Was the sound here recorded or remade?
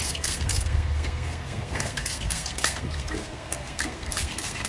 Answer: remade